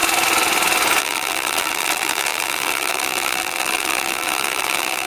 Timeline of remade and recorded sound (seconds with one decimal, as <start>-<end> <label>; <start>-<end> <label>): 0.0-1.0 recorded; 1.0-5.1 remade